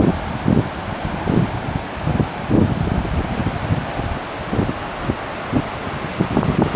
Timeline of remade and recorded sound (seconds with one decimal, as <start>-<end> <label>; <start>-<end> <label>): 0.0-6.8 recorded